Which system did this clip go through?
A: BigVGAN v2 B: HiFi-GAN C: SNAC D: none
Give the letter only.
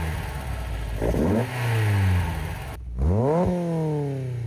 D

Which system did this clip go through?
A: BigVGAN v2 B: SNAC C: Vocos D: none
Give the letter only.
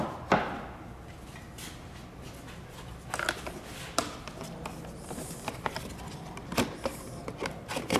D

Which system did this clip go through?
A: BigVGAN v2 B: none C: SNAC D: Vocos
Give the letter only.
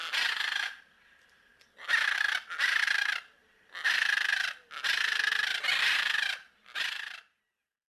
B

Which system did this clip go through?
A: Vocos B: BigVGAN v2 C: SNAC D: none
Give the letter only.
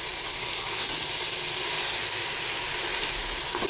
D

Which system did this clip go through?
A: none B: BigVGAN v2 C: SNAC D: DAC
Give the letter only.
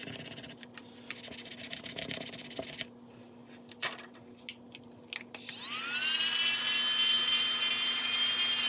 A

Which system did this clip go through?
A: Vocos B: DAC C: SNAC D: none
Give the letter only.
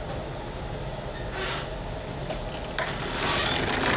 D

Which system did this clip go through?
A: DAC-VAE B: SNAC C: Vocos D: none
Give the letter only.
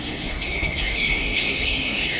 B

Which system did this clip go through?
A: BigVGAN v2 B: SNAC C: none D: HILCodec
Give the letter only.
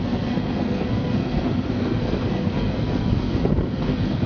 B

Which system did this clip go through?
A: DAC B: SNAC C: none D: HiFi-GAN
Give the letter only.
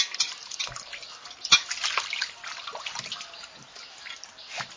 C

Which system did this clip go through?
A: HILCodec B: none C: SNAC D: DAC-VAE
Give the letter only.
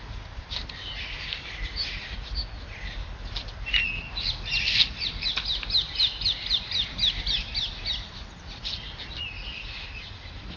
B